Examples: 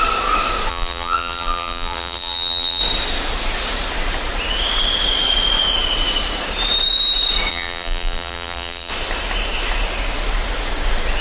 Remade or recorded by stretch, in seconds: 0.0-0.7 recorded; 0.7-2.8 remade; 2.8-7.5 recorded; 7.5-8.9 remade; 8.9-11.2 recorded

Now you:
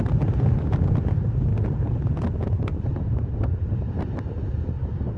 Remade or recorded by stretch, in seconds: 0.0-1.5 recorded; 1.5-2.1 remade; 2.1-2.7 recorded; 2.7-5.2 remade

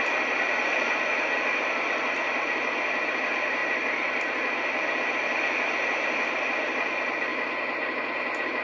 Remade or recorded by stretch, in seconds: 0.0-8.6 recorded

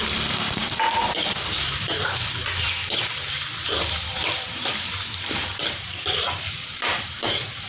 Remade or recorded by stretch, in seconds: 0.0-2.8 remade; 2.8-3.7 recorded; 3.7-7.7 remade

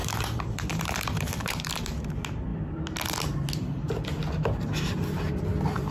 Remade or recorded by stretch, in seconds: 0.0-2.1 remade; 2.1-5.9 recorded